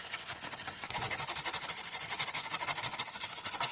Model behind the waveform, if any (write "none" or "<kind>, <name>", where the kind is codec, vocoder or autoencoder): vocoder, Vocos